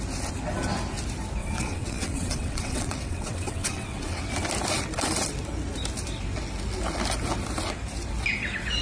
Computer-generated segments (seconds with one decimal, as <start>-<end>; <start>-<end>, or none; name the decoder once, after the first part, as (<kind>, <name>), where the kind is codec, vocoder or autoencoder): 1.4-4.2 (vocoder, WaveNeXt)